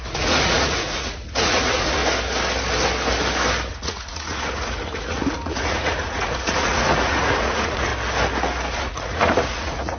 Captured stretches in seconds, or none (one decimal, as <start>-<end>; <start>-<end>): 2.0-3.7; 7.9-8.7